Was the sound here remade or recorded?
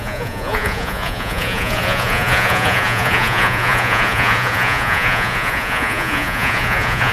remade